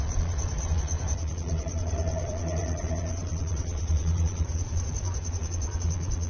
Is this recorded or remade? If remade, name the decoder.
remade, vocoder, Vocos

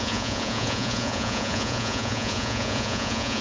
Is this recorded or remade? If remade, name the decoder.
remade, vocoder, Vocos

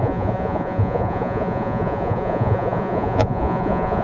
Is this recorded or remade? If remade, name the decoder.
remade, vocoder, Vocos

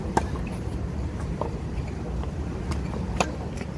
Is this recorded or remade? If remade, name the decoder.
recorded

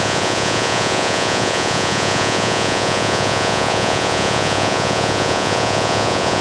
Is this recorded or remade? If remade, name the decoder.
remade, vocoder, Vocos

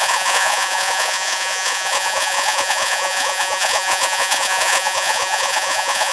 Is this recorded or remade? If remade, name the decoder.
remade, vocoder, Vocos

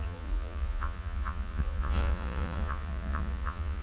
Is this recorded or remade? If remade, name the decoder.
remade, vocoder, Vocos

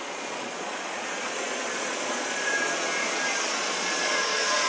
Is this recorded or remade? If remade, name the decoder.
remade, vocoder, Vocos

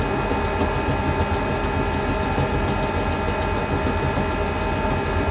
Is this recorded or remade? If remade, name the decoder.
recorded